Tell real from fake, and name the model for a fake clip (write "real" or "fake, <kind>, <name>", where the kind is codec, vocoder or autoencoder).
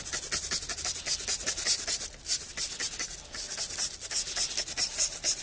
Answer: real